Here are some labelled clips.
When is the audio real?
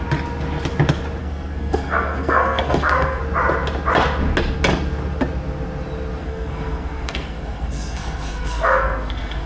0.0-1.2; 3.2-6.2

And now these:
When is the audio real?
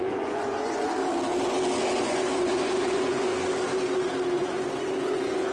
1.0-2.0; 3.3-4.3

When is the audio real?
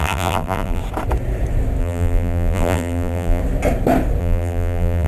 0.8-1.8; 3.4-4.2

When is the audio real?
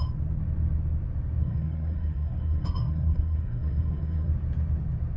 0.0-1.4; 4.3-5.2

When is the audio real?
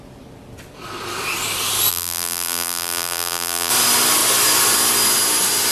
0.0-1.9; 3.7-5.7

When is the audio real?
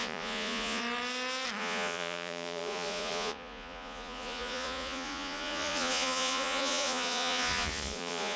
0.8-1.6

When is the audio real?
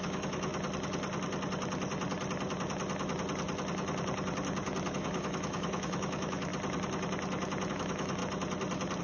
0.5-4.9; 6.5-7.7; 8.2-9.0